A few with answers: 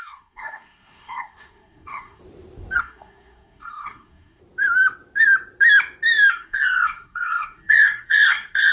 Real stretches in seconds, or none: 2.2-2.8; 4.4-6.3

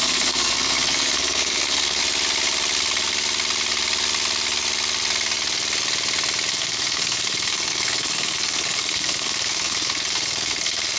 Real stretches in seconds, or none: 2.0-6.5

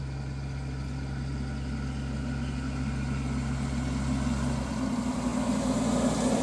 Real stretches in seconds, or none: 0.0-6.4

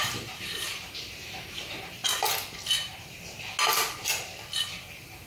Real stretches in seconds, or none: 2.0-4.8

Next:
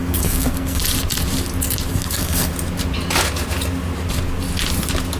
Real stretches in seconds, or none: 0.8-1.9; 2.5-5.2

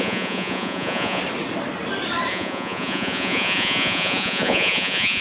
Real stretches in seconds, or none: 1.2-2.3